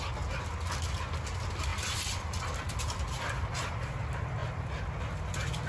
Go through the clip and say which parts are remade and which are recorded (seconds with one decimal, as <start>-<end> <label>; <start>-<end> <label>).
0.0-1.7 recorded; 1.7-3.7 remade; 3.7-4.4 recorded; 4.4-5.0 remade; 5.0-5.7 recorded